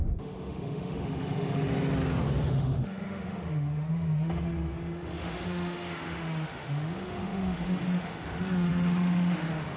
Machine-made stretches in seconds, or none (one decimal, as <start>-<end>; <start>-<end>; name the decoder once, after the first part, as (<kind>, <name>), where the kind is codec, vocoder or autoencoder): 0.0-1.7 (autoencoder, DAC-VAE); 2.5-9.8